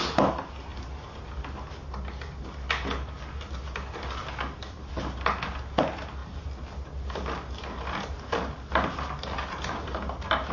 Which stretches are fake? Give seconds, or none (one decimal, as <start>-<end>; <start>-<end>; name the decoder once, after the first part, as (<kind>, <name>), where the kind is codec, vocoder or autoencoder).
none